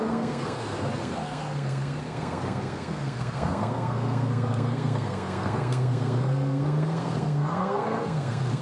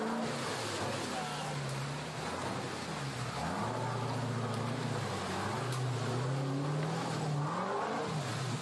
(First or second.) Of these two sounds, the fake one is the first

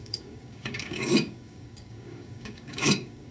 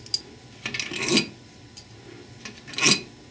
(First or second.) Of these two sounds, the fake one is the first